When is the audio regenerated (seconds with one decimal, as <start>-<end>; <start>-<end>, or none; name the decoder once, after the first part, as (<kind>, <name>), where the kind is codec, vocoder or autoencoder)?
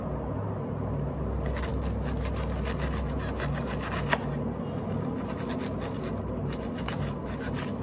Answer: none